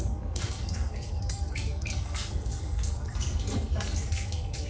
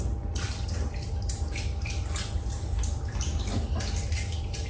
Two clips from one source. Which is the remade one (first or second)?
first